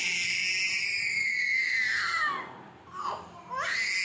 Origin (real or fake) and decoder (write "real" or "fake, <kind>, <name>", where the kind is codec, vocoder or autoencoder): real